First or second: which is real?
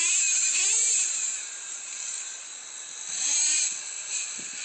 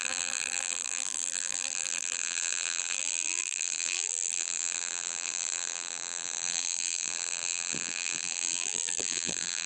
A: first